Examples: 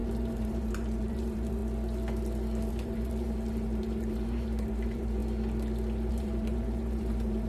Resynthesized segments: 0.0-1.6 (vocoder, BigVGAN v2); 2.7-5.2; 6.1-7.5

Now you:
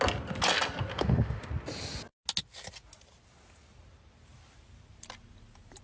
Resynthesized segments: 0.9-1.5 (autoencoder, DAC-VAE)

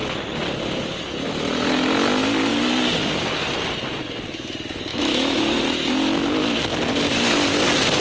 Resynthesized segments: 4.9-5.6 (autoencoder, DAC-VAE)

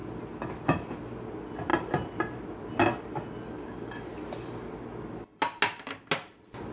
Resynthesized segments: none

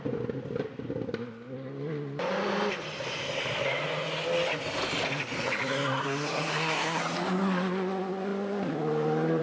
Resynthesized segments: 6.0-7.0 (codec, SNAC)

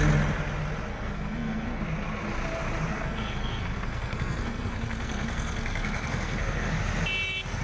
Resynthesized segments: 0.9-1.8 (codec, SNAC); 2.9-6.8

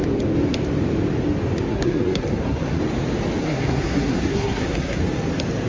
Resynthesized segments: 1.7-2.8 (codec, SNAC); 3.4-5.0